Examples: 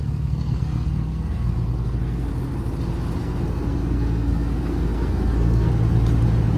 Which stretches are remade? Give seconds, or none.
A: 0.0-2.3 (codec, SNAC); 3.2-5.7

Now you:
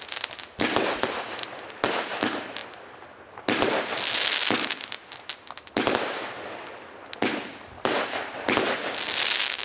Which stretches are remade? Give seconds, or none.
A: none

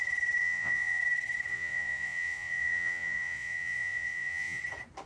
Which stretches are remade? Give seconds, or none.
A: 0.4-1.0 (vocoder, Vocos); 1.5-4.6

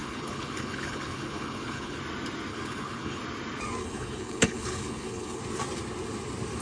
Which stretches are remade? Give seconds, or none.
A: 0.0-2.0 (codec, HILCodec); 2.5-3.2; 3.8-5.4

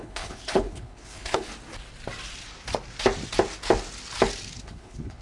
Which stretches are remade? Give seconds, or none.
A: 0.0-1.5 (codec, HILCodec); 4.6-5.2

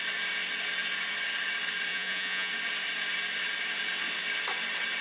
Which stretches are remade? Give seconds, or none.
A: 1.9-2.5 (vocoder, Vocos)

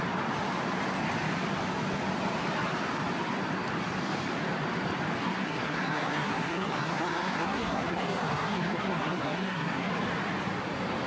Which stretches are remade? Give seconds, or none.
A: 5.2-9.9 (codec, SNAC)

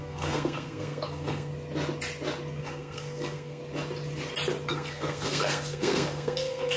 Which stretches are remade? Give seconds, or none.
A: 0.0-1.5 (codec, SNAC); 2.6-3.6; 4.7-6.8